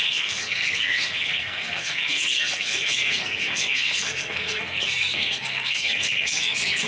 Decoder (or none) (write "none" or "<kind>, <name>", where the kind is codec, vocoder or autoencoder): codec, SNAC